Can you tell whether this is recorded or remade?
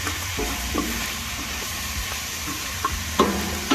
remade